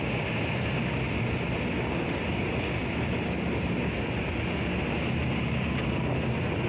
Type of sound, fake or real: real